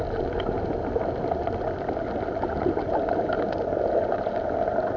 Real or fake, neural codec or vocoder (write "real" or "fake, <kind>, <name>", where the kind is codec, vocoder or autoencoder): real